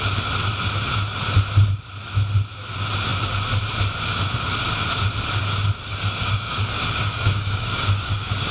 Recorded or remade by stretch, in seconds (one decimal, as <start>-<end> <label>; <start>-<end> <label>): 0.0-5.9 recorded; 5.9-8.5 remade